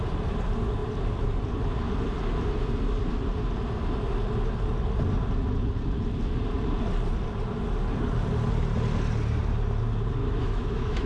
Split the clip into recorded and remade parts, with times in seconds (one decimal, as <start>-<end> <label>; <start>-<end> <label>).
0.0-10.2 recorded; 10.2-11.1 remade